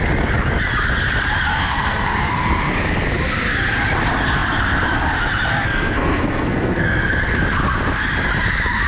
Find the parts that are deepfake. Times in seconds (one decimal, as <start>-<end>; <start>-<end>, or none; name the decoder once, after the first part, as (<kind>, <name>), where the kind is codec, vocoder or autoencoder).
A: 1.5-2.7 (codec, SNAC); 5.5-7.1